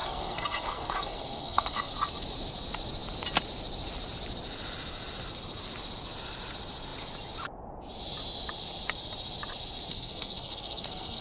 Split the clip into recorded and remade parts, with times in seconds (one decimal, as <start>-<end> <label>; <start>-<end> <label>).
0.0-1.9 remade; 1.9-9.9 recorded; 9.9-11.2 remade